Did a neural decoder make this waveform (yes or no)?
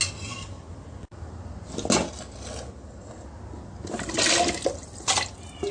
no